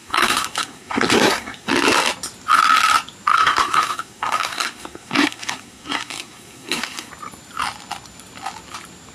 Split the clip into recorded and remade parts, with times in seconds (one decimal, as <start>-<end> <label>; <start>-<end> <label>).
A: 0.0-1.7 remade; 1.7-3.3 recorded; 3.3-7.1 remade; 7.1-9.1 recorded